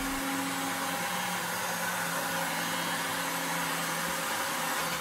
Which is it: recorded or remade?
recorded